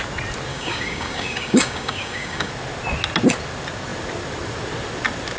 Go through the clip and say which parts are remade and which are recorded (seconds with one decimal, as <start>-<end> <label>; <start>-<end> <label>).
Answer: 0.0-0.5 recorded; 0.5-2.5 remade; 2.5-5.4 recorded